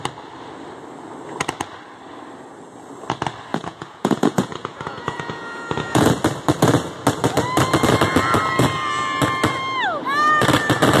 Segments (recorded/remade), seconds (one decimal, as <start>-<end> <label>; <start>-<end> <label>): 0.0-3.5 recorded; 3.5-6.1 remade; 6.1-11.0 recorded